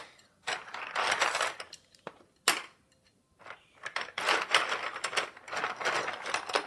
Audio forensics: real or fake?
real